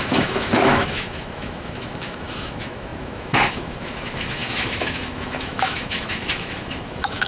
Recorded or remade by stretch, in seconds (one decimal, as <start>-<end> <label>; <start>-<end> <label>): 0.0-7.3 remade